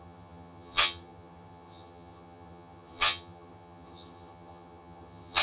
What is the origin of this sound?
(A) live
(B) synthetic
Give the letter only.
B